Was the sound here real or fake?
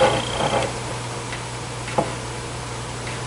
real